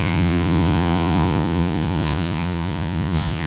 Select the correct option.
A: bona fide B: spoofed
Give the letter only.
B